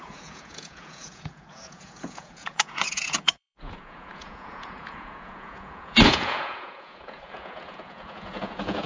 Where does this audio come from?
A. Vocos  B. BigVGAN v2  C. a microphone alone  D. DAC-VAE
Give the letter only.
A